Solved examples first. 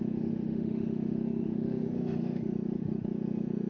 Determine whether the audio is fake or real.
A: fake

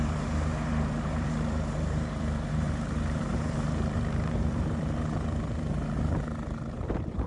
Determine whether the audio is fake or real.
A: fake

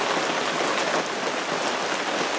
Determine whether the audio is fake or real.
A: real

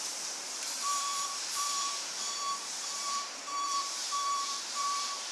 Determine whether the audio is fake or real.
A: fake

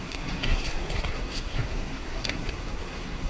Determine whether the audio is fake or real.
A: fake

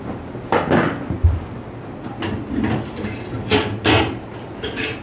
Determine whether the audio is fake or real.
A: real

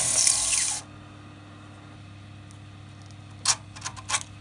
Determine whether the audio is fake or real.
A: real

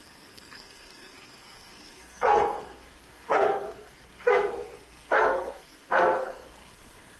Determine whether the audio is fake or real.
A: fake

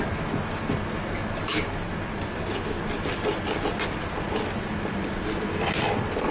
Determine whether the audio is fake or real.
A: real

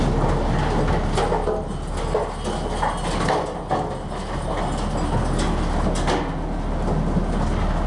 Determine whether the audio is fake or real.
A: real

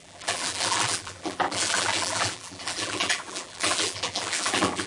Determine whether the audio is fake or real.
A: fake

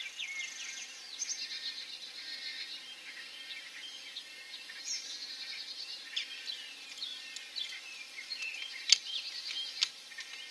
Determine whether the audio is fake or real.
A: real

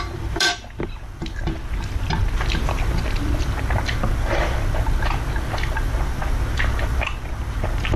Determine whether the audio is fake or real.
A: real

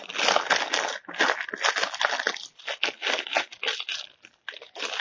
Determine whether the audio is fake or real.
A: real